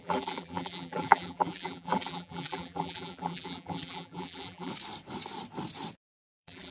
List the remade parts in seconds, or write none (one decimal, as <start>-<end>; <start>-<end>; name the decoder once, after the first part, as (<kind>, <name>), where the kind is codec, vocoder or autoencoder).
0.0-4.7 (vocoder, BigVGAN v2); 6.1-6.7